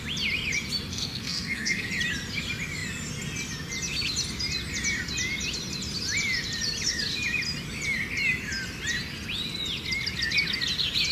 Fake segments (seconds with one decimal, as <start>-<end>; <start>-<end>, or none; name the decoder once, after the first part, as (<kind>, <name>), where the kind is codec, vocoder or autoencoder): 0.9-1.9 (codec, SNAC)